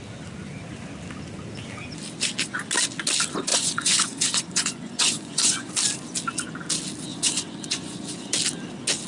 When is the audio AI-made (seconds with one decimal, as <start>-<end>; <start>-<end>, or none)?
3.5-5.7; 7.1-8.3